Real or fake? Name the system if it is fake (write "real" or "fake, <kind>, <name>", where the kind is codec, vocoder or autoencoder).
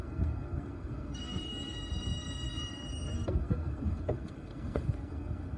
fake, codec, SNAC